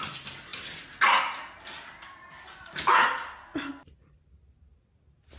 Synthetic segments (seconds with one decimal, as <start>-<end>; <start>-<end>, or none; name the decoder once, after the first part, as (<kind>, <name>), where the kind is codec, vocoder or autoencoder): none